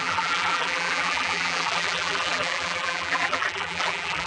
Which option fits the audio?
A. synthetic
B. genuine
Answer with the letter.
A